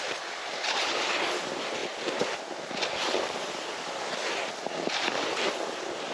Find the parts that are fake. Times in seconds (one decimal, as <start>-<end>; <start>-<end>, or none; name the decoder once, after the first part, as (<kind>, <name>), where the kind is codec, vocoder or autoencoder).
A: none